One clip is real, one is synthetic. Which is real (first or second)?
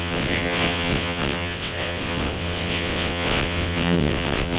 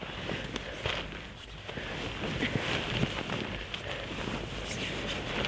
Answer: second